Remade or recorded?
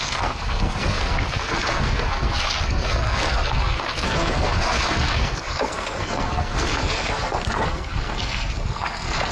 remade